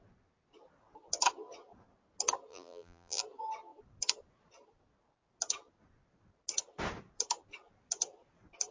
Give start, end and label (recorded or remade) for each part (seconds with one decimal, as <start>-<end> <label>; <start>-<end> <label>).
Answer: 0.0-2.5 recorded; 2.5-3.2 remade; 3.2-8.7 recorded